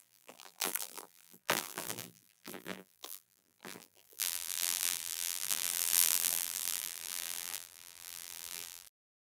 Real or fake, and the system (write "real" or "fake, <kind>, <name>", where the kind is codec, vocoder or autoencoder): fake, vocoder, BigVGAN v2